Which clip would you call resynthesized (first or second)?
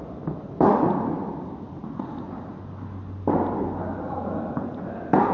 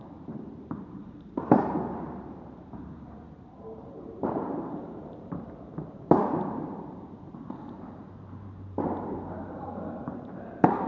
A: second